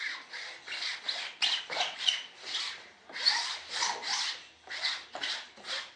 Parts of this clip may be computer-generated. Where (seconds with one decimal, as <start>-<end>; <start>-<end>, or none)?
none